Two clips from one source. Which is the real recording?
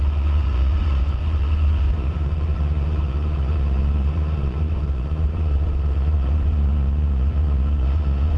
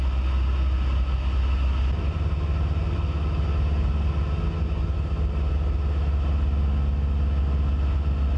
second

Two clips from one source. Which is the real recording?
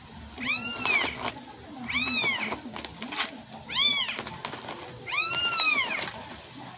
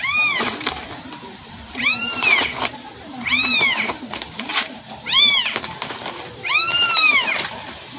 first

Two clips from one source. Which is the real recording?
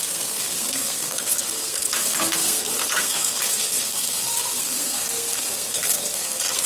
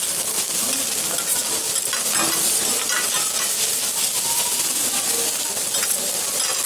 second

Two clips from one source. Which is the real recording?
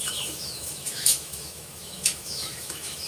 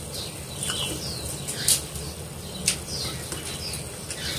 second